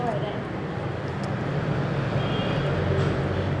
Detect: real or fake real